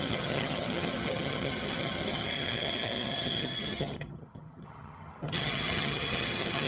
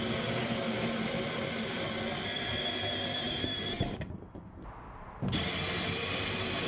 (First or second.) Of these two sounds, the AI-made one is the first